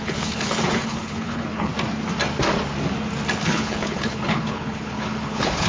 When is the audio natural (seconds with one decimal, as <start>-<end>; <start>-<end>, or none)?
1.7-3.4